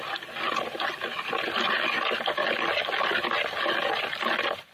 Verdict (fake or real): real